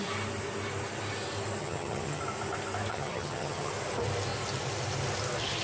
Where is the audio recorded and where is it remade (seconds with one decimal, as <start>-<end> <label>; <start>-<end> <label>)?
0.0-1.6 recorded; 1.6-2.2 remade; 2.2-2.9 recorded; 2.9-3.7 remade; 3.7-5.6 recorded